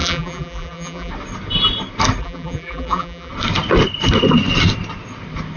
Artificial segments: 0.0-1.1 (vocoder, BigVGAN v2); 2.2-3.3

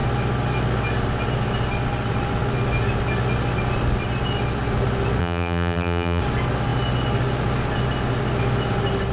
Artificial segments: 5.2-6.2 (vocoder, BigVGAN v2)

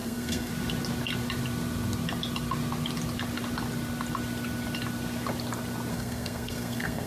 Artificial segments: 0.0-0.5 (codec, SNAC); 5.9-7.1

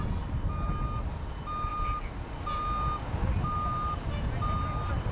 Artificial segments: none

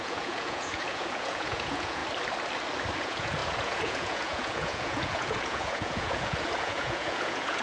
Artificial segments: 0.0-2.0 (vocoder, Vocos); 3.0-7.6